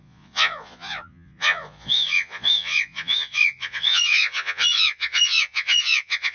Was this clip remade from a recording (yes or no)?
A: yes